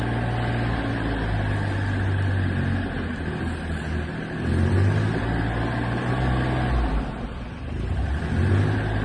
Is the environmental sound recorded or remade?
recorded